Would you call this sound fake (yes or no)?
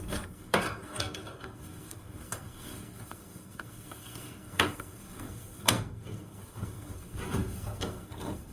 yes